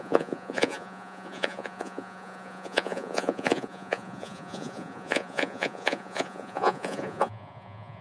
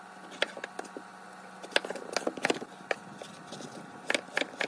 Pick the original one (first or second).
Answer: second